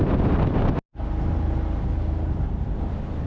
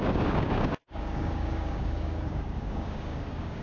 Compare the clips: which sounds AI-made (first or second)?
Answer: second